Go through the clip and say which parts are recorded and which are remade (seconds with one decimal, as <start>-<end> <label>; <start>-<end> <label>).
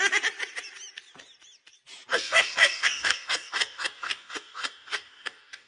0.0-2.1 recorded; 2.1-5.7 remade